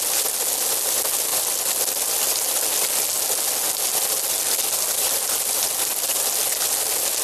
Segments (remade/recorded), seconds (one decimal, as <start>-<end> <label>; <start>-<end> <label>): 0.0-7.2 recorded